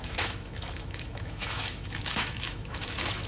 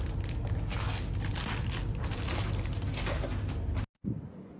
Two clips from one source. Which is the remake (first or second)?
first